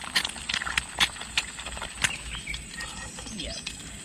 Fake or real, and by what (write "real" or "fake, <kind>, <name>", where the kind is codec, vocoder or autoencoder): real